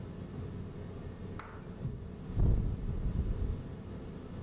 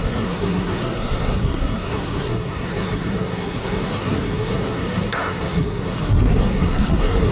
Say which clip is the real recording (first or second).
first